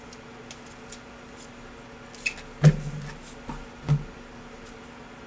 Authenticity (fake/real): real